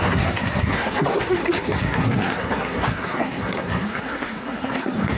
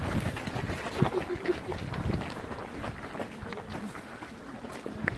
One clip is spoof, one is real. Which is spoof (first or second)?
first